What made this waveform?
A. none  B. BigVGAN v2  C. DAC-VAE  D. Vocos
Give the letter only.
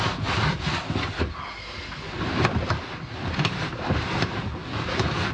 A